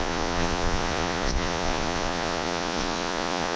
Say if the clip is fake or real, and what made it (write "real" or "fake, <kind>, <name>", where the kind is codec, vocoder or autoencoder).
fake, vocoder, Vocos